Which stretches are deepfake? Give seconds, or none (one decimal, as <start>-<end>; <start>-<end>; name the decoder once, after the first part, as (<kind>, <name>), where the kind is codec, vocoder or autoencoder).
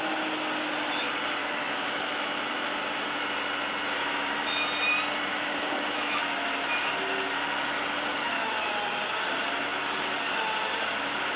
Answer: 1.4-2.8 (autoencoder, DAC-VAE); 5.3-6.2; 8.1-8.7